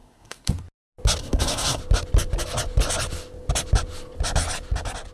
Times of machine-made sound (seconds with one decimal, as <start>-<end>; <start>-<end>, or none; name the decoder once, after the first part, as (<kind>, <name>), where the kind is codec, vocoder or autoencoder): 0.0-0.5 (codec, SNAC); 1.2-1.8